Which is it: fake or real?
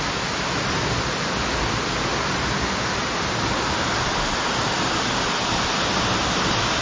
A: real